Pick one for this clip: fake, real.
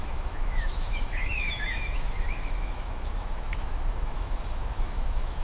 fake